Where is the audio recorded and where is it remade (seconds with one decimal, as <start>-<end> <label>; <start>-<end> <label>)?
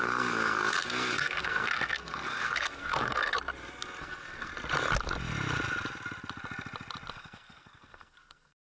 0.0-3.3 remade; 3.3-4.0 recorded; 4.0-4.5 remade; 4.5-7.1 recorded; 7.1-8.7 remade